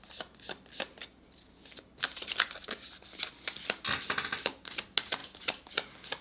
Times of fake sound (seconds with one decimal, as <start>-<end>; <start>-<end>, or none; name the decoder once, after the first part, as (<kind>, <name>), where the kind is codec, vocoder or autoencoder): none